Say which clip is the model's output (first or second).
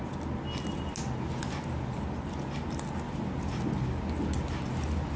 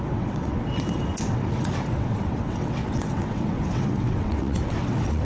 second